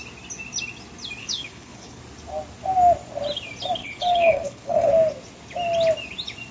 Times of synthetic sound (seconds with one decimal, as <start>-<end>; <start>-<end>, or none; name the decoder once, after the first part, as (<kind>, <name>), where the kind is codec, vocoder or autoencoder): 1.2-2.0 (codec, HILCodec); 3.8-4.9